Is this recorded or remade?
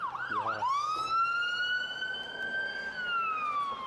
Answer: recorded